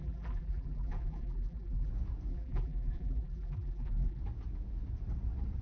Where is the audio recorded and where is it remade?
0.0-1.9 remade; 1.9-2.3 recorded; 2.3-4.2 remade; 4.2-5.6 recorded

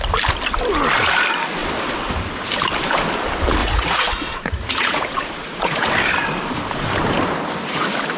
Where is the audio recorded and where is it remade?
0.0-3.6 recorded; 3.6-5.9 remade; 5.9-8.2 recorded

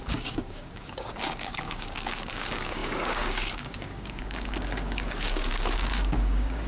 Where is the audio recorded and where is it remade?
0.0-6.7 remade

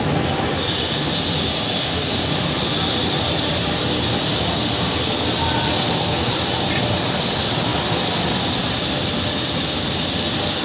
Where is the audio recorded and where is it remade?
0.0-5.7 recorded; 5.7-6.3 remade; 6.3-10.6 recorded

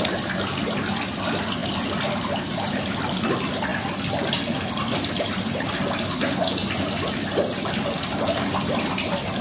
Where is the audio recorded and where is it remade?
0.0-9.4 recorded

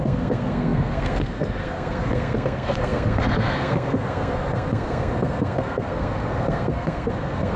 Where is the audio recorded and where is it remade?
0.0-7.6 remade

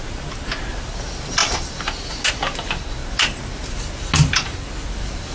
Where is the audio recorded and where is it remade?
0.0-5.3 recorded

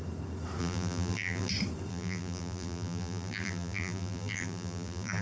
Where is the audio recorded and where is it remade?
0.0-0.6 recorded; 0.6-1.5 remade; 1.5-1.9 recorded; 1.9-5.2 remade